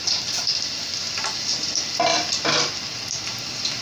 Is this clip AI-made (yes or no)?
yes